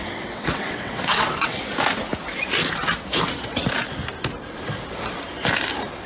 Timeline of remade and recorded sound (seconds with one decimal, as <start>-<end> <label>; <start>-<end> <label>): 0.0-1.6 remade; 1.6-6.1 recorded